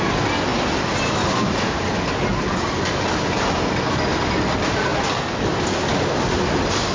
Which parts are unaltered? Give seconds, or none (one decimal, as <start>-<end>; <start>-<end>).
0.0-6.9